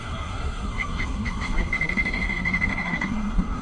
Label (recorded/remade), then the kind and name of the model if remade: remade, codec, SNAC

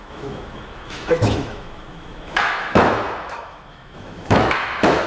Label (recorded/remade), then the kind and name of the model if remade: remade, autoencoder, DAC-VAE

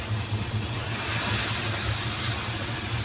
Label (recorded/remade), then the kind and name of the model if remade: recorded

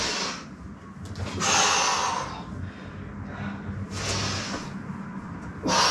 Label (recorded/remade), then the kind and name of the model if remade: recorded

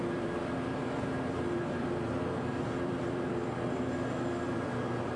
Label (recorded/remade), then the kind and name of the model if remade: remade, vocoder, BigVGAN v2